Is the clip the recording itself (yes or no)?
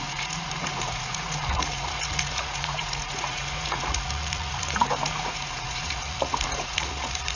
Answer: no